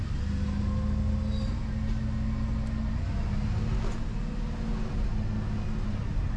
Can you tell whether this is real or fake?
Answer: real